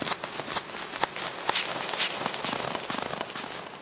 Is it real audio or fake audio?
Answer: real